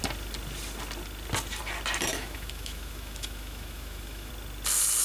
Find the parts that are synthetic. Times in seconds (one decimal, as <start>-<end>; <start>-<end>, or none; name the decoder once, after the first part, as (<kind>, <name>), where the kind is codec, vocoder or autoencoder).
2.1-4.3 (autoencoder, DAC-VAE)